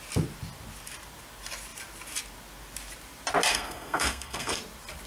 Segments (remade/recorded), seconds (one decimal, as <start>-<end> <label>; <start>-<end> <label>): 0.0-3.5 recorded; 3.5-4.6 remade; 4.6-5.1 recorded